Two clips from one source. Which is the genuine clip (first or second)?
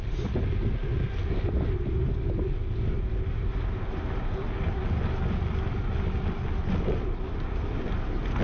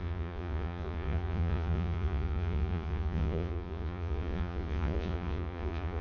first